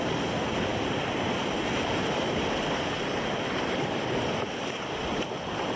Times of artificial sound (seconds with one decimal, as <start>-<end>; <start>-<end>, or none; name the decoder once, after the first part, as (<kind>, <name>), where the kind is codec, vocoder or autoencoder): none